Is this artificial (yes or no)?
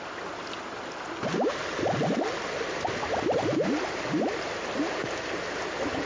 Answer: no